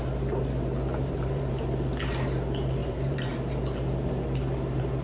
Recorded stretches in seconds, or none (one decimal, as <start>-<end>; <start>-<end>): 0.0-0.9; 1.5-2.8; 3.3-5.0